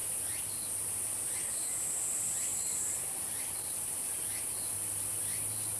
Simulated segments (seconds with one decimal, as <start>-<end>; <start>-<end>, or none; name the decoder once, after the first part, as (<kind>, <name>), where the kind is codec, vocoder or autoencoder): 2.5-4.0 (vocoder, BigVGAN v2)